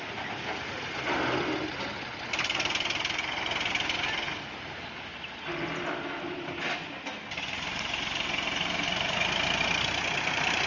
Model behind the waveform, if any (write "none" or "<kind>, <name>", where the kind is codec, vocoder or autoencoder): none